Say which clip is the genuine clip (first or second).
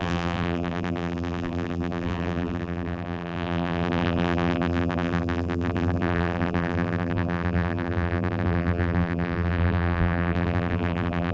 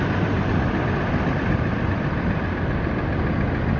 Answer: second